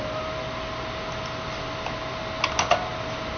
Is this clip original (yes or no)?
yes